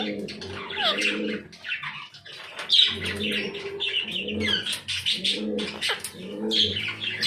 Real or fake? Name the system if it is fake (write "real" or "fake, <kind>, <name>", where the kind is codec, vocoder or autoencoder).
real